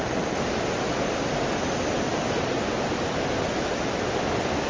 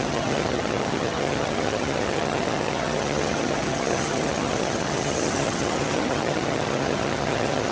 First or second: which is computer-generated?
second